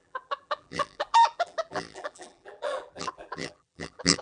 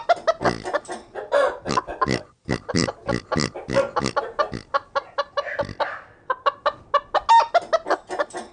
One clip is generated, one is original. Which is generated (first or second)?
first